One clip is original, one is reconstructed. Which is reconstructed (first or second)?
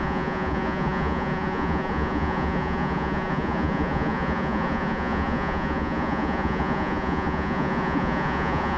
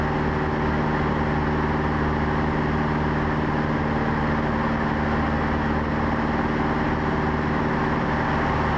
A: first